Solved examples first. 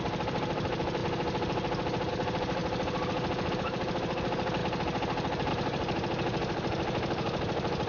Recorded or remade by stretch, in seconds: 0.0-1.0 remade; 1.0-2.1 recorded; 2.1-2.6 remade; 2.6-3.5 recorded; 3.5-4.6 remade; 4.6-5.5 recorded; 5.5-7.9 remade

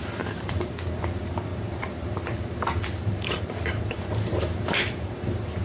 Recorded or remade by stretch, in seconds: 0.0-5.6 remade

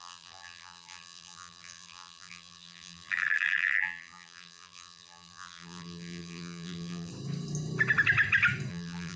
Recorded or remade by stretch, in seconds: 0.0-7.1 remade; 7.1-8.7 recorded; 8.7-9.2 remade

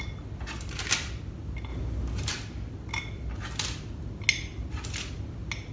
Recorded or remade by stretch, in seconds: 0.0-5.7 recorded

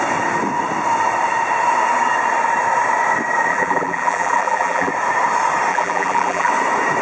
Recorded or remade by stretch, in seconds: 0.0-3.5 recorded; 3.5-4.9 remade; 4.9-5.7 recorded; 5.7-6.5 remade; 6.5-7.0 recorded